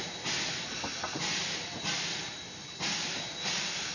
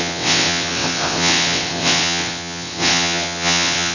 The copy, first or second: second